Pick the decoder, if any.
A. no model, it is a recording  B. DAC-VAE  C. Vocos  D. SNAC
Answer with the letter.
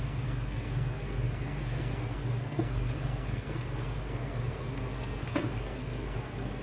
D